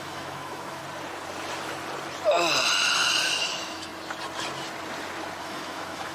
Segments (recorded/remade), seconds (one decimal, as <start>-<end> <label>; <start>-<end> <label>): 0.0-0.8 remade; 0.8-3.4 recorded; 3.4-3.9 remade; 3.9-5.4 recorded; 5.4-6.1 remade